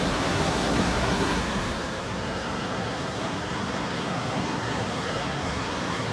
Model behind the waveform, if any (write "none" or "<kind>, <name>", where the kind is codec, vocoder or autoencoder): codec, SNAC